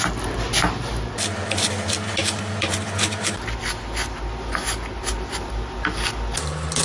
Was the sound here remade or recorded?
recorded